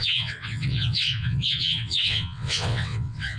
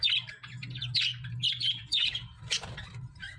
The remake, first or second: first